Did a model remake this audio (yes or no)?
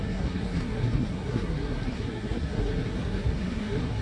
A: yes